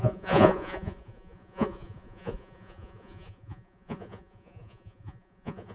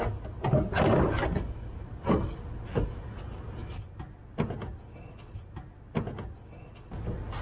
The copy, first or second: first